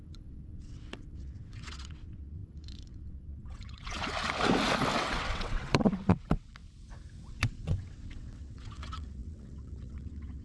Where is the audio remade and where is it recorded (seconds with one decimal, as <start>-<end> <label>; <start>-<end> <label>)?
0.0-4.0 remade; 4.0-5.0 recorded; 5.0-6.6 remade; 6.6-7.3 recorded; 7.3-10.4 remade

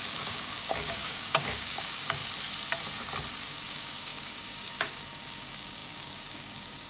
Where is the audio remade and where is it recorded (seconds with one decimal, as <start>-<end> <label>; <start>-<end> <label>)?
0.0-2.2 remade; 2.2-3.4 recorded; 3.4-6.9 remade

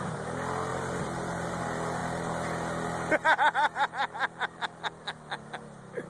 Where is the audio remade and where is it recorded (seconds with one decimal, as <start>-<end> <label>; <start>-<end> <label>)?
0.0-0.7 recorded; 0.7-1.6 remade; 1.6-6.1 recorded

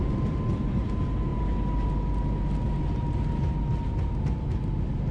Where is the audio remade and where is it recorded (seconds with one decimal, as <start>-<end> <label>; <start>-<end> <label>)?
0.0-5.1 recorded

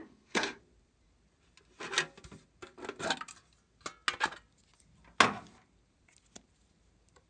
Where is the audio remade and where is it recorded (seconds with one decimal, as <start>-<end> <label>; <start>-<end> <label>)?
0.0-0.6 remade; 0.6-7.3 recorded

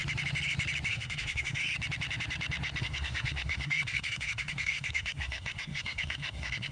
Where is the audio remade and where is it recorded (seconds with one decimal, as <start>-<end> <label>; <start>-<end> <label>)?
0.0-0.9 recorded; 0.9-1.6 remade; 1.6-2.8 recorded; 2.8-6.7 remade

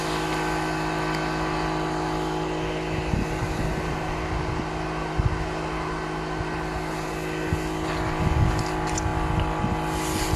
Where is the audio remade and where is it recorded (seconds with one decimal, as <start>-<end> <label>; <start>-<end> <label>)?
0.0-10.4 recorded

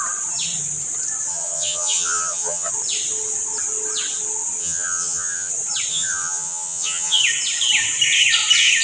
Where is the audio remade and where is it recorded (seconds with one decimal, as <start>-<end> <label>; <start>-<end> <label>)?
0.0-1.3 recorded; 1.3-2.7 remade; 2.7-4.6 recorded; 4.6-5.5 remade; 5.5-5.9 recorded; 5.9-7.2 remade; 7.2-8.8 recorded